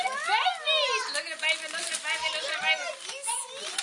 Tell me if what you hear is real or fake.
real